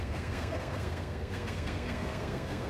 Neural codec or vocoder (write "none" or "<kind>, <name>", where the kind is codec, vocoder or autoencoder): codec, SNAC